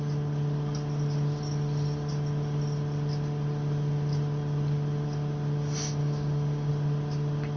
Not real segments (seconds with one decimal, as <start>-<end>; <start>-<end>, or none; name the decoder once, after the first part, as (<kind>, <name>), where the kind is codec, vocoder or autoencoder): 6.0-6.7 (codec, DAC)